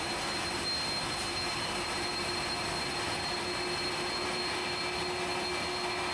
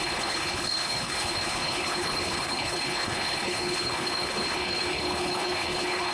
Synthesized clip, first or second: second